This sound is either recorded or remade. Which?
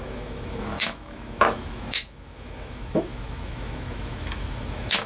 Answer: remade